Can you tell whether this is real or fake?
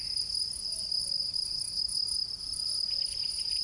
real